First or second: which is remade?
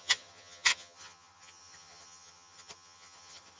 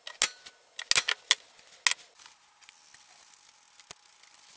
first